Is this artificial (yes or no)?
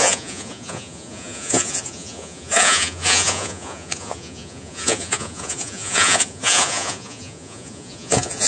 yes